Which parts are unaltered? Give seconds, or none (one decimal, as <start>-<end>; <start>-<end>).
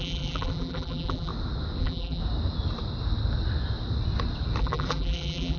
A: 1.3-1.8; 2.2-4.6